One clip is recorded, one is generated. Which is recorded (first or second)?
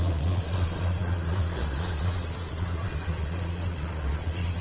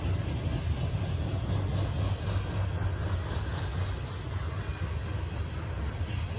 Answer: second